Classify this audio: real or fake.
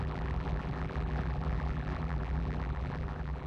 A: fake